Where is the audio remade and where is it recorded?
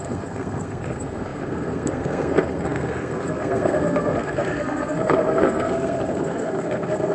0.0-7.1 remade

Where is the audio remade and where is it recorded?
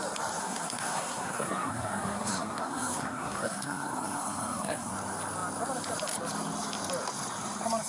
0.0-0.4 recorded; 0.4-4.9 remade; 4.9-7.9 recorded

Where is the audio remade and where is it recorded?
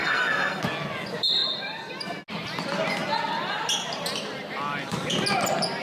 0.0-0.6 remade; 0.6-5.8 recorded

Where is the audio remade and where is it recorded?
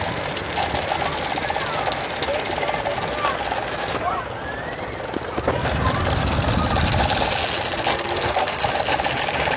0.0-7.9 recorded; 7.9-8.6 remade; 8.6-9.6 recorded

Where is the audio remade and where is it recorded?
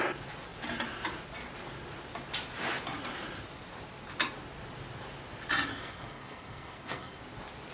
0.0-5.7 recorded; 5.7-7.2 remade; 7.2-7.7 recorded